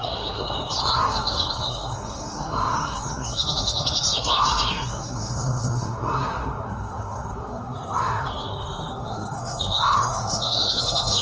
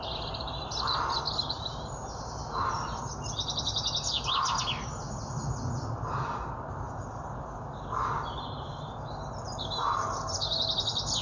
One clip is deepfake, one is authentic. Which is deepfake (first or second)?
first